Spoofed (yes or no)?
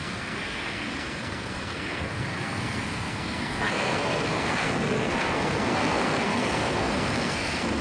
yes